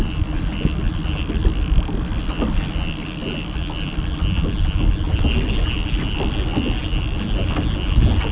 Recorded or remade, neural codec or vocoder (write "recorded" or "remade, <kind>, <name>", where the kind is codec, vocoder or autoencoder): recorded